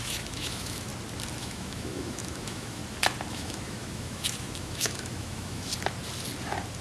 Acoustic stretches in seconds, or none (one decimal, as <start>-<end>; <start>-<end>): 0.9-1.4; 2.8-3.3; 5.7-6.8